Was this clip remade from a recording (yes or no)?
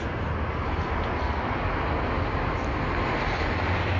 no